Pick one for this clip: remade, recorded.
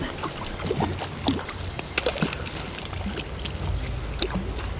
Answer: recorded